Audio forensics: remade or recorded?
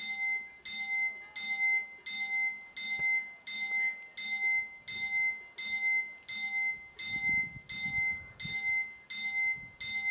recorded